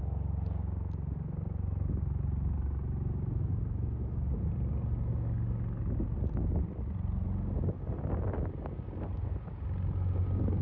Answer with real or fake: real